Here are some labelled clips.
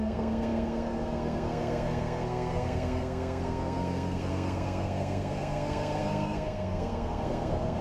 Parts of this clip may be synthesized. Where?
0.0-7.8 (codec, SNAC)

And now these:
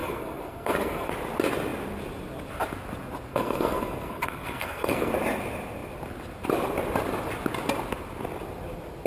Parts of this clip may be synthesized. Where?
0.0-1.1 (codec, SNAC); 3.3-5.1

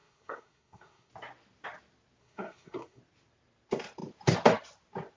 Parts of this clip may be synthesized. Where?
0.0-1.1 (codec, SNAC); 2.2-3.0

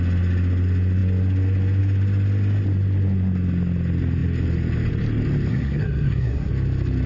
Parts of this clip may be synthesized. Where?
5.5-6.5 (codec, SNAC)

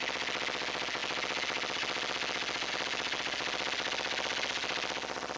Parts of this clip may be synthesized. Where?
none

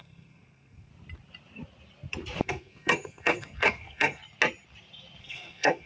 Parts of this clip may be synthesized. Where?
0.0-0.9 (codec, SNAC); 2.4-4.2; 5.2-5.9

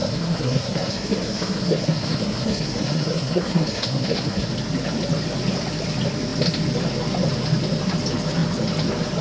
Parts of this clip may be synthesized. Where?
0.0-4.5 (codec, SNAC)

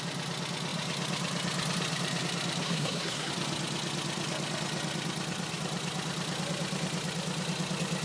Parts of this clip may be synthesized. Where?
2.6-3.3 (codec, SNAC)